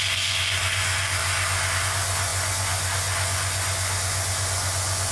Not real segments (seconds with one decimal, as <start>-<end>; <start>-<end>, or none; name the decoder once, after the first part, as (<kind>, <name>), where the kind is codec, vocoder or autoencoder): 0.0-1.2 (vocoder, Vocos); 1.8-5.1